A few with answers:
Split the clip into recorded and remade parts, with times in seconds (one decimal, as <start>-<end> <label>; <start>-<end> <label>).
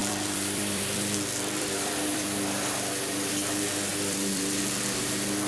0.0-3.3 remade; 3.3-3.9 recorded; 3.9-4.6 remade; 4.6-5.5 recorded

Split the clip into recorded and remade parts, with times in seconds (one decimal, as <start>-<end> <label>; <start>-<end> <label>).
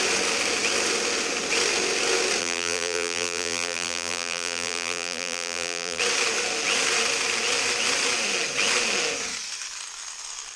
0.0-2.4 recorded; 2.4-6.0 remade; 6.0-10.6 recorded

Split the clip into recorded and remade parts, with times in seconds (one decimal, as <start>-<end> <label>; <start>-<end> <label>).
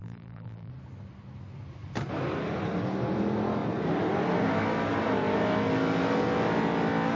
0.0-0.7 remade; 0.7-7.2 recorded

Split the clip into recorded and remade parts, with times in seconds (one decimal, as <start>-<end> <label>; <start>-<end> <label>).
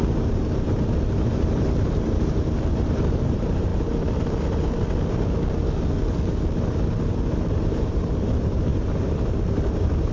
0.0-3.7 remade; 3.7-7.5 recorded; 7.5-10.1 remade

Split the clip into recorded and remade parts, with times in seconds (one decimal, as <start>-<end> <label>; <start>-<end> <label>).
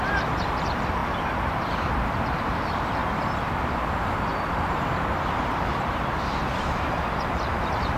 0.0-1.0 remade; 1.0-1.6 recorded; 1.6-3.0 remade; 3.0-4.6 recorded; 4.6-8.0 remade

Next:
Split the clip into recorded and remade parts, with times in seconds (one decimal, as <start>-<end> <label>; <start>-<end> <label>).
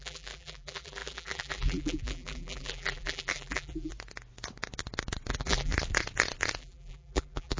0.0-3.9 remade; 3.9-5.3 recorded; 5.3-5.7 remade; 5.7-6.6 recorded; 6.6-7.6 remade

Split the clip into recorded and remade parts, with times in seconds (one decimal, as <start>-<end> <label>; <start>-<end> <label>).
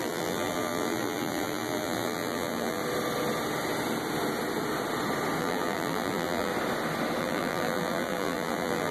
0.0-2.8 remade; 2.8-5.4 recorded; 5.4-6.5 remade; 6.5-7.2 recorded; 7.2-8.9 remade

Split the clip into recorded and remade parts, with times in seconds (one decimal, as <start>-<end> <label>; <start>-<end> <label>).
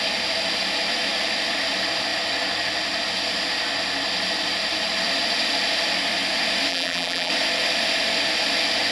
0.0-6.7 recorded; 6.7-7.3 remade; 7.3-8.9 recorded